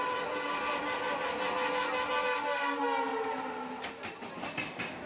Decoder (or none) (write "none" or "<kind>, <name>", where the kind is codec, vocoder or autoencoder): none